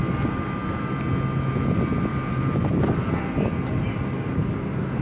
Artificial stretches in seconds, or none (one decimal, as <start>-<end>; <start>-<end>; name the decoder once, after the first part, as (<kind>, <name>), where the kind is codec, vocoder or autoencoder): 2.1-2.8 (vocoder, BigVGAN v2)